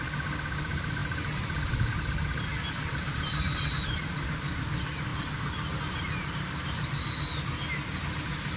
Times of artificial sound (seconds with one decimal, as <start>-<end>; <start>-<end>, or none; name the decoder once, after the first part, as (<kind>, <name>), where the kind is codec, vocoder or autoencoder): none